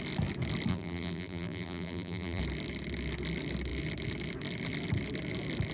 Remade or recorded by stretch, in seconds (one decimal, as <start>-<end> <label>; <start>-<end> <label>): 0.0-0.7 recorded; 0.7-2.4 remade; 2.4-5.7 recorded